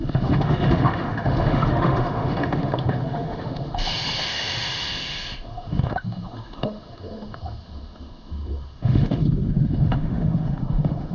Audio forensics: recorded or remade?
remade